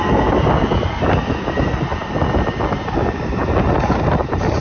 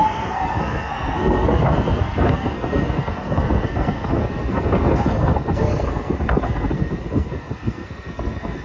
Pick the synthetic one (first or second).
second